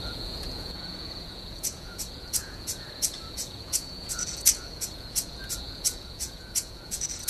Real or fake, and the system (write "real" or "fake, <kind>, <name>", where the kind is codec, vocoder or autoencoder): fake, vocoder, Vocos